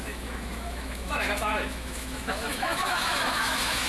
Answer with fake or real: fake